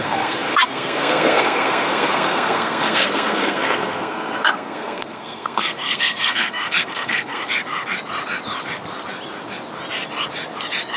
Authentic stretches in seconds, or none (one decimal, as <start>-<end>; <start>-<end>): 7.4-11.0